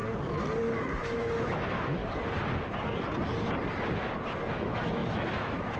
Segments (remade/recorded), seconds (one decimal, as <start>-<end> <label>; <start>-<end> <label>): 0.0-0.6 recorded; 0.6-2.0 remade; 2.0-4.5 recorded; 4.5-5.8 remade